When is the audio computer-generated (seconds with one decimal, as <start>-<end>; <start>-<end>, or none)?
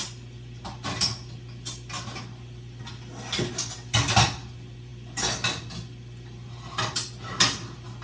none